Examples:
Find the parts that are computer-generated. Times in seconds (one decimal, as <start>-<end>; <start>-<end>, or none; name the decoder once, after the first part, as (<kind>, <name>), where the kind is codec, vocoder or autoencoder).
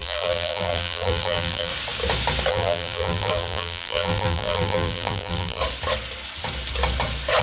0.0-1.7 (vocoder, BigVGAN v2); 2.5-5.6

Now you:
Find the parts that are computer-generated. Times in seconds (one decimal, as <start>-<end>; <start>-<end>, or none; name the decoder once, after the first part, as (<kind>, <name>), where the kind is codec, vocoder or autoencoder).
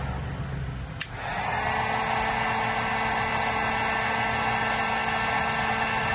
none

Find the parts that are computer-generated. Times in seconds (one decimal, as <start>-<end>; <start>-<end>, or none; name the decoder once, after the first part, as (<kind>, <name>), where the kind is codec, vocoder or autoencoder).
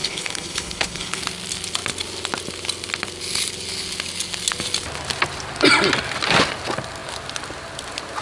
0.0-1.2 (codec, HILCodec)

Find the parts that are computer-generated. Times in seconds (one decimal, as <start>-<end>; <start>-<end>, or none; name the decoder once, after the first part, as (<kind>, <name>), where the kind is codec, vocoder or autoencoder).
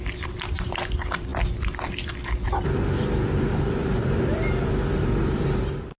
0.0-1.3 (vocoder, BigVGAN v2); 2.1-6.0